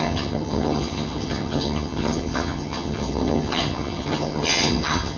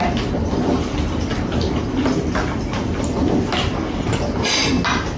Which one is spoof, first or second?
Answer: first